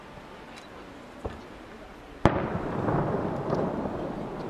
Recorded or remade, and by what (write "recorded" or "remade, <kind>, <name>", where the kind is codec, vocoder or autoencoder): recorded